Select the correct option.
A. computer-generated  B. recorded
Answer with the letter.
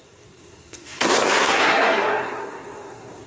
A